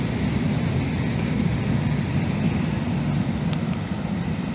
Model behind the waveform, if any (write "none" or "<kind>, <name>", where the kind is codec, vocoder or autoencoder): none